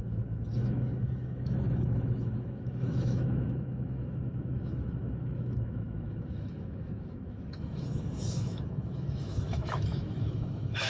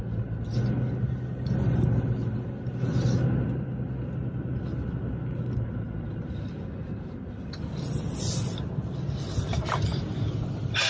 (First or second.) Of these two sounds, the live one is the second